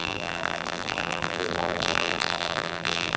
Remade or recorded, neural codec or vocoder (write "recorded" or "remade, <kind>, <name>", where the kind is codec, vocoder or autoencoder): remade, vocoder, BigVGAN v2